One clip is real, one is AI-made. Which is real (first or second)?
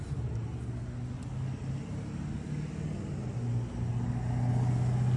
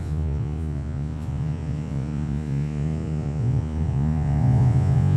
first